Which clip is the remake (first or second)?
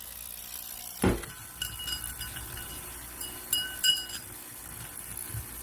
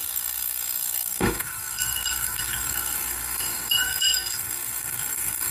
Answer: second